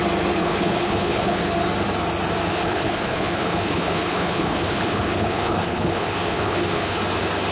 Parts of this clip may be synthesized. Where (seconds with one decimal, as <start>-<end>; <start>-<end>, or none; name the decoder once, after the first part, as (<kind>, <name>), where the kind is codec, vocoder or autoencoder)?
0.4-1.4 (codec, HILCodec); 2.5-7.0